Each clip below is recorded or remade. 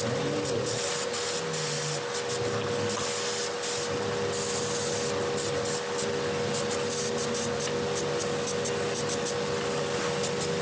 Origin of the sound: recorded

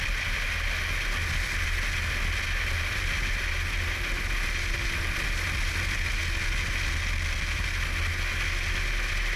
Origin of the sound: recorded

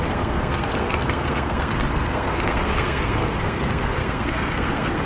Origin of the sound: remade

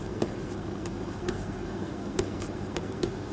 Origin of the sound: remade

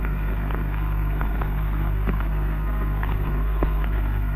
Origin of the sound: remade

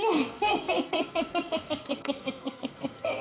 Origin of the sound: remade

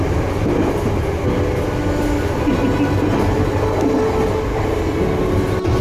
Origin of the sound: recorded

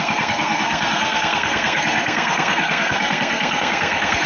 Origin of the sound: remade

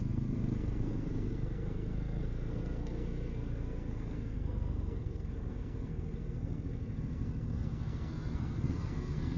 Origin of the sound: remade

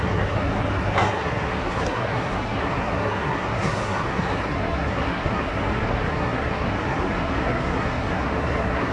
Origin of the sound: remade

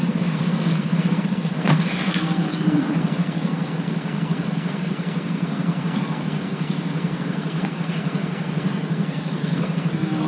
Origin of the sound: remade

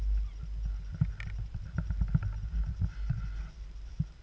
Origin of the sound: recorded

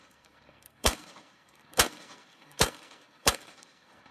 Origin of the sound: remade